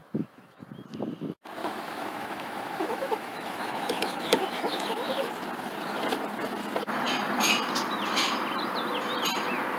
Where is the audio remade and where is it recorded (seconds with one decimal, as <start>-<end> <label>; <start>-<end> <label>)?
0.0-0.6 remade; 0.6-1.6 recorded; 1.6-5.3 remade; 5.3-9.8 recorded